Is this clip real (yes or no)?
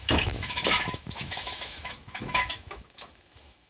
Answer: no